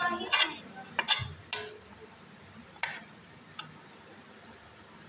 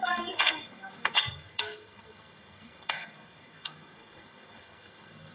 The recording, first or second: first